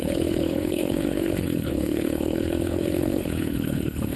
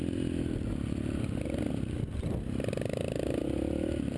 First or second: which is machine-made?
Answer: first